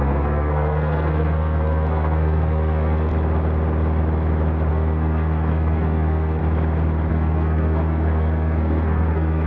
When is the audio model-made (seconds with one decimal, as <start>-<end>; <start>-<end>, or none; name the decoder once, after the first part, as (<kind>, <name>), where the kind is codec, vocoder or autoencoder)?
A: 0.0-3.1 (codec, SNAC); 4.7-6.4; 7.1-9.5